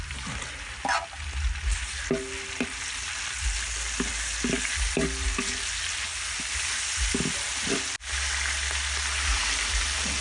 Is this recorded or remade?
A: recorded